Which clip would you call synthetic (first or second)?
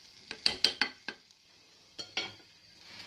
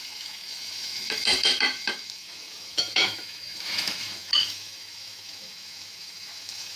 second